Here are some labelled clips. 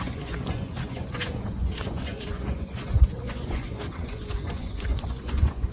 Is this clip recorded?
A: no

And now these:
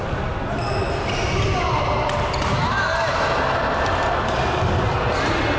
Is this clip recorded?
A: yes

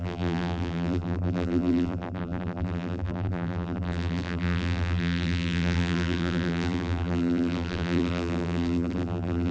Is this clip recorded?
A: no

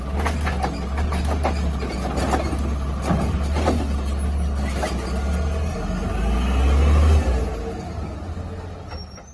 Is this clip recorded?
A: yes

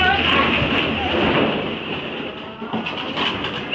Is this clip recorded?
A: yes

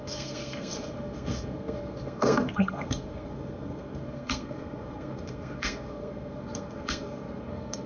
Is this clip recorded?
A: no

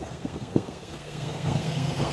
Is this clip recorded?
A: no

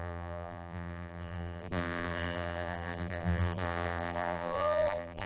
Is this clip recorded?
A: no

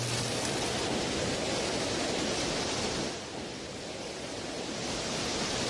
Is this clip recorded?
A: yes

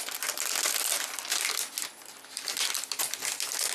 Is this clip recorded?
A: yes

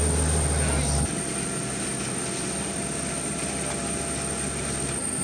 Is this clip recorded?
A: yes